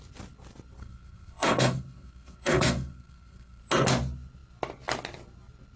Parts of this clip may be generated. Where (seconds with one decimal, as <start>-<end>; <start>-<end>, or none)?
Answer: 0.8-3.6

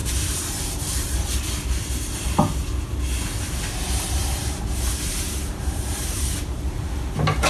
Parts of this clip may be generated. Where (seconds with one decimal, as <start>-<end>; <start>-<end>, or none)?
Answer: 0.0-1.2; 4.2-6.9

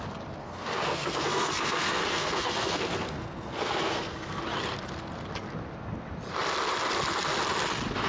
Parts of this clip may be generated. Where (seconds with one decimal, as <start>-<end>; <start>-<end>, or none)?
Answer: 0.4-4.4

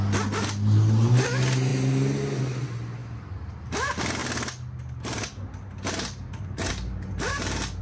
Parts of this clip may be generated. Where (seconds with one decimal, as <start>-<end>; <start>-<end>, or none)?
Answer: 3.0-3.7

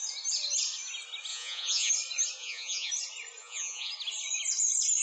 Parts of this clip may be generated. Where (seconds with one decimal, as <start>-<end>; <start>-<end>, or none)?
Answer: 1.3-1.9; 2.4-2.9; 3.4-3.9

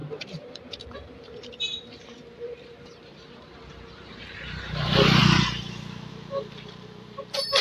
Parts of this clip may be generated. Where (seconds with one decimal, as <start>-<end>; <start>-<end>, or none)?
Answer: 0.0-7.6

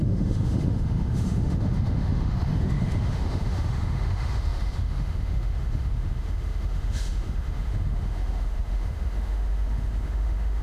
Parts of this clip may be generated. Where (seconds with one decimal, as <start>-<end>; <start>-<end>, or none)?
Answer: 0.0-10.6